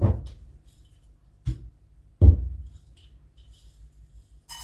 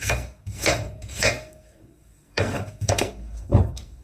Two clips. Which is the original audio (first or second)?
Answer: first